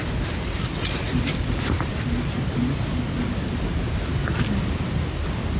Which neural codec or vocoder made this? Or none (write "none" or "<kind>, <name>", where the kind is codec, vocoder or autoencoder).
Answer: none